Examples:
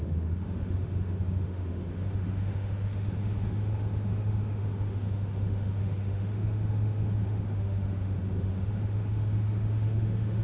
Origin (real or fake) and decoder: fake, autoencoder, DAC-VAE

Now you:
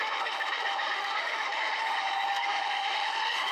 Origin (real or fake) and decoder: fake, autoencoder, DAC-VAE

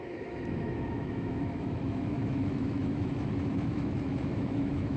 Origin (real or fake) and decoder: fake, autoencoder, DAC-VAE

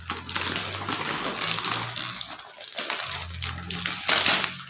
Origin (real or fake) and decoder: real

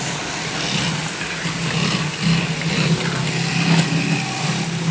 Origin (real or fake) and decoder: real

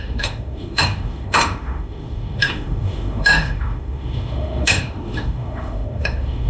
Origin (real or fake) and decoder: fake, autoencoder, DAC-VAE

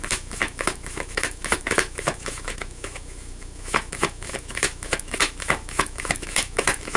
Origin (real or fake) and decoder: fake, autoencoder, DAC-VAE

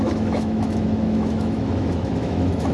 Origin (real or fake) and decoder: fake, autoencoder, DAC-VAE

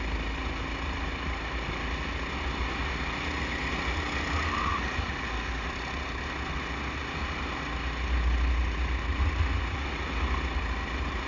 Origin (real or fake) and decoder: real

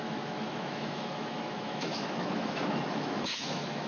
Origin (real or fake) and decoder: fake, autoencoder, DAC-VAE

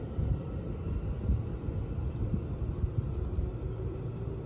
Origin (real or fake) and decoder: real